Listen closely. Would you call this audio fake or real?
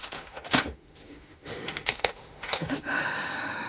fake